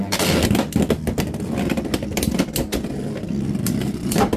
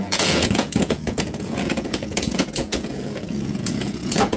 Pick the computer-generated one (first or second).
second